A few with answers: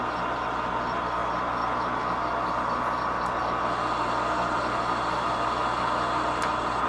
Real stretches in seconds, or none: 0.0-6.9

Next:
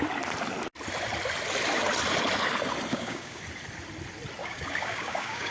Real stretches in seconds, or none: 0.0-2.9; 3.4-4.4

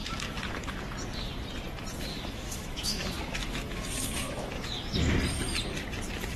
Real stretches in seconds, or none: 0.8-2.1; 5.2-6.4